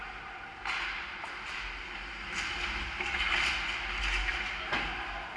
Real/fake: real